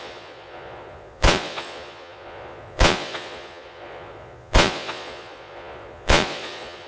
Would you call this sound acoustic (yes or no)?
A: no